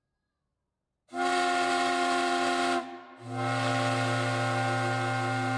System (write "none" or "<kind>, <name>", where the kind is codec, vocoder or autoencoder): none